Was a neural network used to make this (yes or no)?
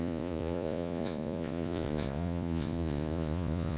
yes